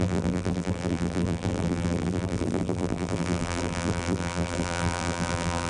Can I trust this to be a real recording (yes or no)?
no